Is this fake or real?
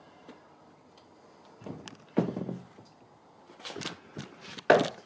real